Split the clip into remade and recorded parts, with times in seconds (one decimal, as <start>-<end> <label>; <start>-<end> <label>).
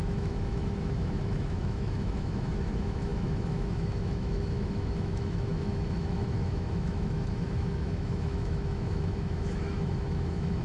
0.0-10.6 remade